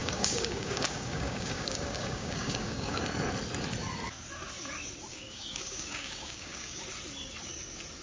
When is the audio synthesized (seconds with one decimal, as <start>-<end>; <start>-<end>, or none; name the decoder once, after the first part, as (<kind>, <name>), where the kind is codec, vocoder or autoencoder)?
0.0-3.0 (codec, DAC); 5.1-6.8